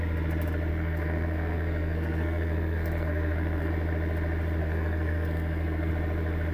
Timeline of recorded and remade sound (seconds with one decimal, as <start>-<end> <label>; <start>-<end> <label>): 0.0-0.7 recorded; 0.7-3.7 remade; 3.7-4.6 recorded; 4.6-5.9 remade; 5.9-6.5 recorded